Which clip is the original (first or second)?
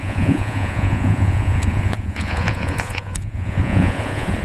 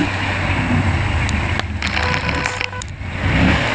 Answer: second